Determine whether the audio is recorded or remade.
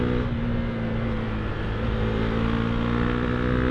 recorded